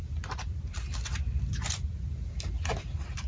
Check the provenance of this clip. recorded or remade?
recorded